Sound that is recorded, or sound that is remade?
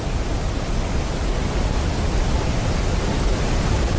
recorded